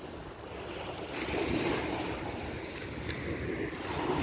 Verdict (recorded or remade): recorded